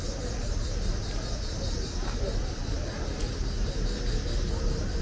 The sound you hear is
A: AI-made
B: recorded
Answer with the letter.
B